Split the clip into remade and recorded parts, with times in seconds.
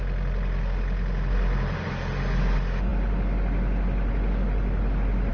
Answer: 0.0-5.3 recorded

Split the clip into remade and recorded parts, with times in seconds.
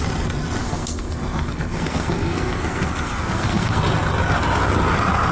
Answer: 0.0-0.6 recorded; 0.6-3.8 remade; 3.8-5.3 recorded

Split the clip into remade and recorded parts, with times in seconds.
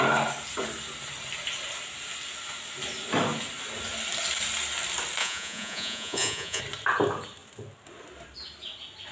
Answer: 0.0-5.2 recorded; 5.2-6.6 remade; 6.6-9.1 recorded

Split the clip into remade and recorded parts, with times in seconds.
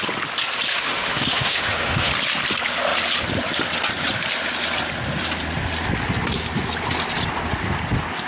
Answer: 0.0-0.7 recorded; 0.7-2.1 remade; 2.1-8.3 recorded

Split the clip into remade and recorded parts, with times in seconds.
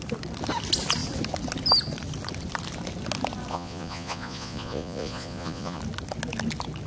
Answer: 0.0-3.5 recorded; 3.5-5.8 remade; 5.8-6.9 recorded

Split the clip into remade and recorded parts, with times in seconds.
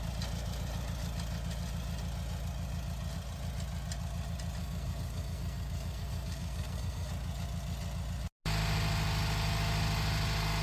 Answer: 0.0-4.6 recorded; 4.6-7.1 remade; 7.1-10.6 recorded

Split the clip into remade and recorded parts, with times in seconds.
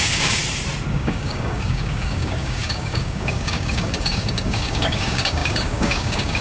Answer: 0.0-0.4 remade; 0.4-0.9 recorded; 0.9-6.4 remade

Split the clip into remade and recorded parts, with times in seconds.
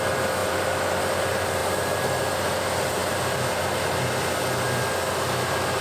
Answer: 0.0-5.8 recorded